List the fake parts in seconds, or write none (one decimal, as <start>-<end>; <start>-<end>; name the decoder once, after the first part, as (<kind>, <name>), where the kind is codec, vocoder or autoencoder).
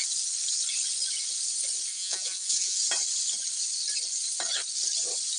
1.9-2.8 (vocoder, Vocos)